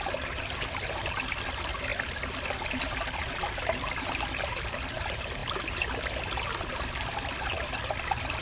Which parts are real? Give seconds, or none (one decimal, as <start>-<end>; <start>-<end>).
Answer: 0.0-8.4

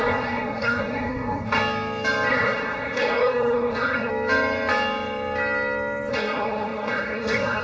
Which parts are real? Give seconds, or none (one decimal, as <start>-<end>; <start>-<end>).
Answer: 1.6-2.3; 4.1-6.1